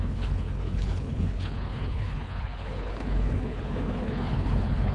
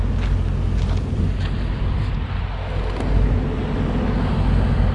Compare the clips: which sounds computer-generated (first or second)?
first